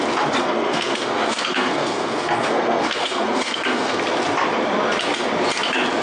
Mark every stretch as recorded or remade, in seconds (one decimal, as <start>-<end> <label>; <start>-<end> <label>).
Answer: 0.0-0.4 recorded; 0.4-4.0 remade; 4.0-6.0 recorded